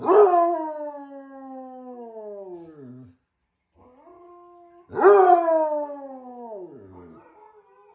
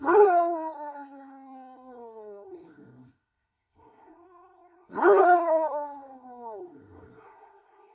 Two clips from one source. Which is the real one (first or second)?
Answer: first